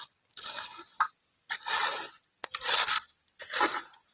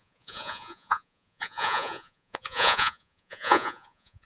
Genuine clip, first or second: first